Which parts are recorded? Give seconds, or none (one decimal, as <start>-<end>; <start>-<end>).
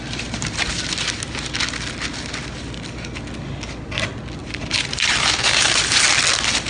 0.0-4.4; 6.0-6.7